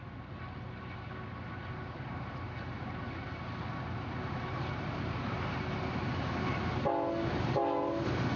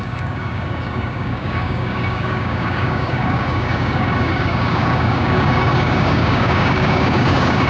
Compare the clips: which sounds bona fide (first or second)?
first